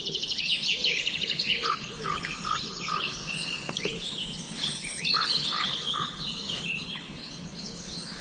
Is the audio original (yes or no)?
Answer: no